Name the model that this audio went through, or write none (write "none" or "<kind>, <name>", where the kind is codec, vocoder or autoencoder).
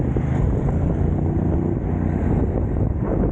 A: none